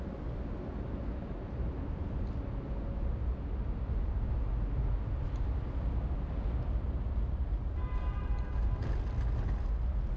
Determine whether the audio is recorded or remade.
recorded